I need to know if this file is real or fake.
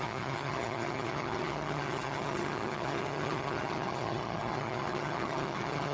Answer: fake